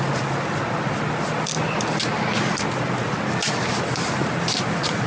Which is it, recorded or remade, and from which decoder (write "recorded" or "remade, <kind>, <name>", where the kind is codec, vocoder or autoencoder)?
recorded